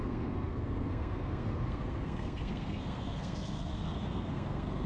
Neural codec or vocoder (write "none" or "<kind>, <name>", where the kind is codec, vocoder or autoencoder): codec, SNAC